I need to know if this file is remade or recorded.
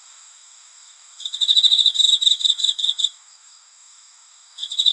remade